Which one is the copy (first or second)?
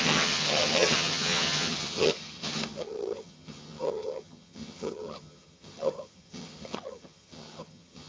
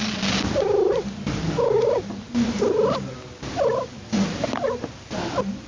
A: first